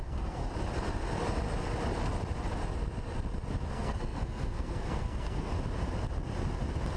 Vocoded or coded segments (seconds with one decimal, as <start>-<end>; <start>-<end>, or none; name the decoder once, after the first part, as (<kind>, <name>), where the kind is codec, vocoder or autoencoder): 0.0-0.4 (codec, SNAC); 3.7-5.5